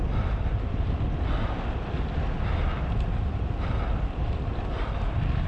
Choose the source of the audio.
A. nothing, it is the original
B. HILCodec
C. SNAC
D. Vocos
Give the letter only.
A